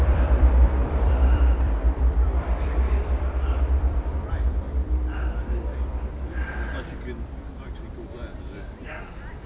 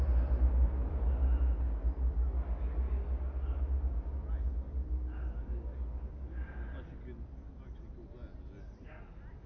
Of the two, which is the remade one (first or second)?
first